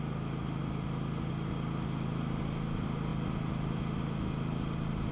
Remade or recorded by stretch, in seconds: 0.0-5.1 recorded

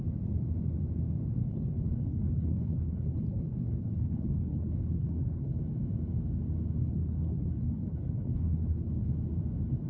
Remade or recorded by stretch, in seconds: 0.0-1.4 recorded; 1.4-5.6 remade; 5.6-6.8 recorded; 6.8-9.1 remade; 9.1-9.9 recorded

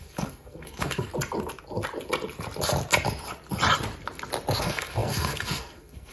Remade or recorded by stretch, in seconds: 0.0-1.1 remade; 1.1-4.6 recorded; 4.6-6.1 remade

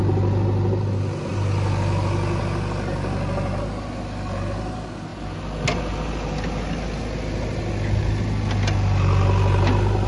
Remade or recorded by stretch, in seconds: 0.0-10.1 recorded